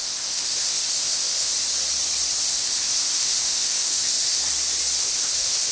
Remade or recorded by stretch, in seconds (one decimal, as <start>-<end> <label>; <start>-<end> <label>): 0.0-1.5 remade; 1.5-2.4 recorded; 2.4-4.4 remade; 4.4-5.0 recorded; 5.0-5.7 remade